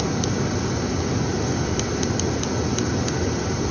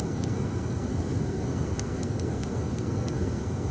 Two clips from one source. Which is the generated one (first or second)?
second